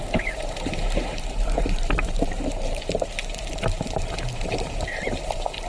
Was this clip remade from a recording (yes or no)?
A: yes